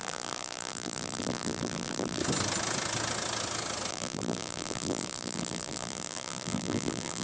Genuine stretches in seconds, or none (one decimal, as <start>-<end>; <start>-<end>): 2.2-3.9